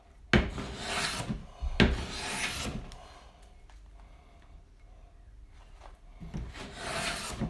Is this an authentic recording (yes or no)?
yes